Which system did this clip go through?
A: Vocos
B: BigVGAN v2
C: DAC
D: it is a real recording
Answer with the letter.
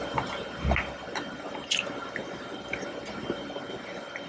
D